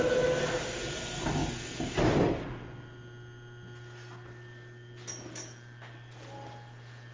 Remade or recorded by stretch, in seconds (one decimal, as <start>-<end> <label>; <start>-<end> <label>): 0.0-7.1 recorded